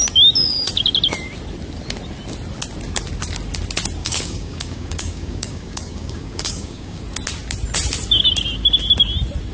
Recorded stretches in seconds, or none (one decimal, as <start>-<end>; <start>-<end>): 0.0-4.0; 7.0-9.5